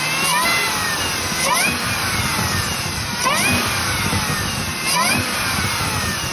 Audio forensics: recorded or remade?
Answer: remade